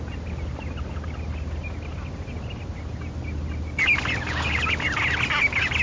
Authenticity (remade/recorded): recorded